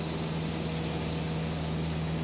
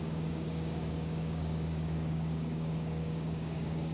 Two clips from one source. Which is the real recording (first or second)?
first